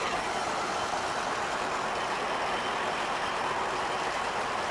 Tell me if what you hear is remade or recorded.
recorded